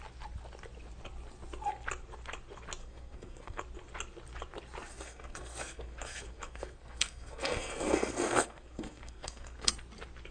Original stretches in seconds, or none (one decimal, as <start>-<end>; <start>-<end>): 0.0-2.8; 3.6-4.9; 9.7-10.3